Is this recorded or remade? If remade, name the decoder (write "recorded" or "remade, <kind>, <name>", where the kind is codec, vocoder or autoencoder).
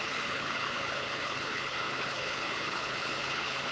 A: remade, codec, HILCodec